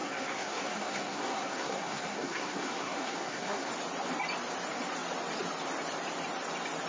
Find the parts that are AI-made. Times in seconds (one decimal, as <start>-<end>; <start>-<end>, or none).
0.0-3.7